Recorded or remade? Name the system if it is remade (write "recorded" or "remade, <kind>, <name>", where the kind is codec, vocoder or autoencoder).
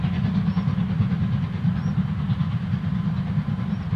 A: recorded